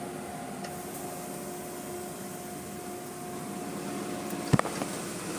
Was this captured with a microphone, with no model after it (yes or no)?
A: yes